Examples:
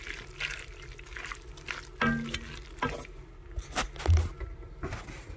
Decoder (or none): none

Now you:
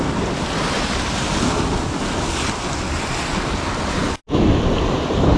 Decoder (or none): none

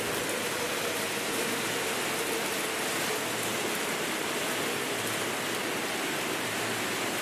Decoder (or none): none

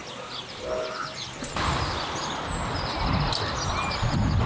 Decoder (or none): none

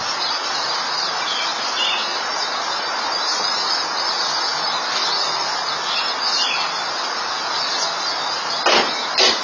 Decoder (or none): none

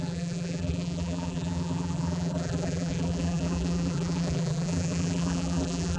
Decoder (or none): vocoder, BigVGAN v2